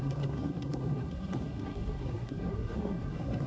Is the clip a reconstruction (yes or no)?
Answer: yes